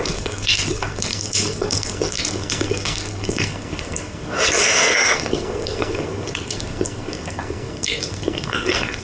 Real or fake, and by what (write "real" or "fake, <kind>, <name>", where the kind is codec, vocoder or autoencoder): fake, codec, SNAC